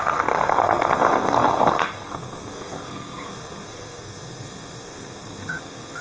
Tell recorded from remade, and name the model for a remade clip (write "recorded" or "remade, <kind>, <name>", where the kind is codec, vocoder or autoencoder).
remade, codec, SNAC